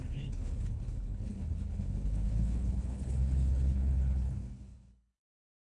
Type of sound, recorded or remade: remade